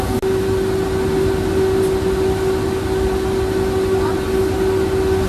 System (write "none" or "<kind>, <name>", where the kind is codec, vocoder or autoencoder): none